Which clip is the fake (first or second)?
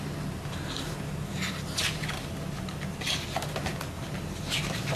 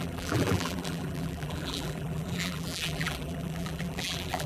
second